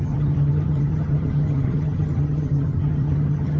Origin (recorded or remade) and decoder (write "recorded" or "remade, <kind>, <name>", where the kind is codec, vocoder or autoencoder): remade, vocoder, HiFi-GAN